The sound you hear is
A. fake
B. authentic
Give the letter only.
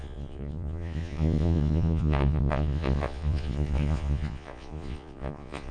A